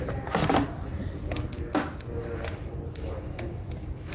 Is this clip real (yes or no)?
yes